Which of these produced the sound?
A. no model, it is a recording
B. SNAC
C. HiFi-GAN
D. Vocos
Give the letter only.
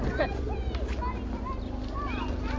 A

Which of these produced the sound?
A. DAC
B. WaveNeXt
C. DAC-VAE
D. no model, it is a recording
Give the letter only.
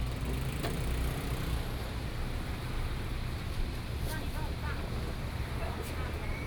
D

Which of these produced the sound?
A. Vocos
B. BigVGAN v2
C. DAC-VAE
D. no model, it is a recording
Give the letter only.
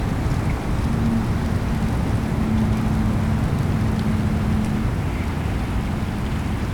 D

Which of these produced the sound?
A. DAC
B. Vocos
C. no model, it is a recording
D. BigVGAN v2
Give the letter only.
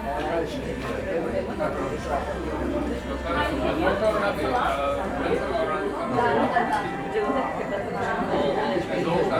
D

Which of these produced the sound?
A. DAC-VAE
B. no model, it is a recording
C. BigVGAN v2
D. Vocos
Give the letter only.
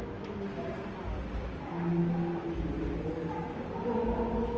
B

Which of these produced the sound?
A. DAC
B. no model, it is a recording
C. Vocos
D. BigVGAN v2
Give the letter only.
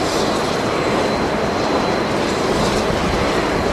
B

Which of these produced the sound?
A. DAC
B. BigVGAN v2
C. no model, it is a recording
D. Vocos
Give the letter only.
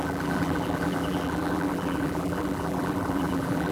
B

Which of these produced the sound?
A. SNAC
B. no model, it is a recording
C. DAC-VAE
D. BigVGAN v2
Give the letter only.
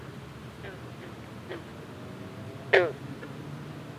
B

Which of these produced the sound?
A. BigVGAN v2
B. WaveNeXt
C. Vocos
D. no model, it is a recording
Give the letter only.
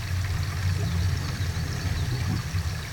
D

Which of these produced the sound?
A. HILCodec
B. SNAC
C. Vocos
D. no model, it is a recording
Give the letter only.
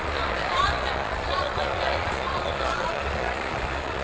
C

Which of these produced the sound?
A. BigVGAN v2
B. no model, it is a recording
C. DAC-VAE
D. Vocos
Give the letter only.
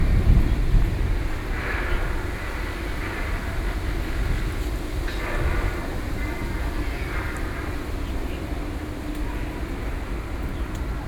B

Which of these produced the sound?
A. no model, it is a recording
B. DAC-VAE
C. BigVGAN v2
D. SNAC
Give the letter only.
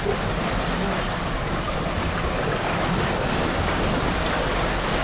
A